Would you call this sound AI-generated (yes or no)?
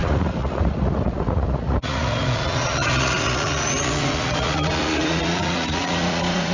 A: yes